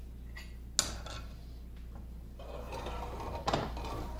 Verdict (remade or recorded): recorded